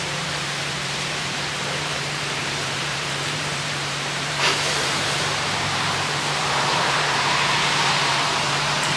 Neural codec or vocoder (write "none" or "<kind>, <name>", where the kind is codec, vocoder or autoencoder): vocoder, BigVGAN v2